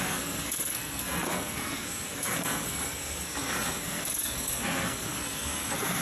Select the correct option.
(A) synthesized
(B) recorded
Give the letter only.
A